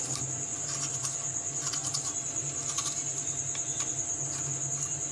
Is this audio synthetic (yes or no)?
no